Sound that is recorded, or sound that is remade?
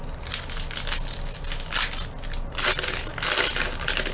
recorded